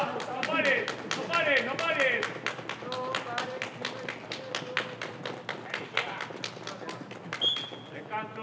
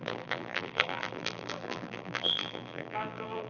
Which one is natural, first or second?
first